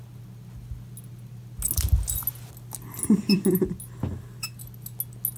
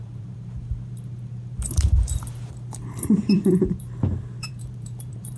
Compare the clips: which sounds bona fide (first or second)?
first